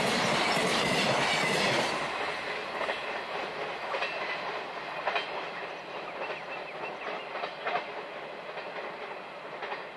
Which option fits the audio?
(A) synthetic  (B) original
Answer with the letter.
B